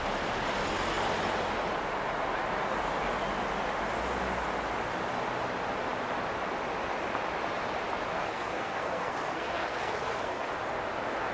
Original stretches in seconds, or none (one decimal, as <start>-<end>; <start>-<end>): 0.0-8.1; 10.5-11.3